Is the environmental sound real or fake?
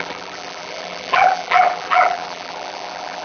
fake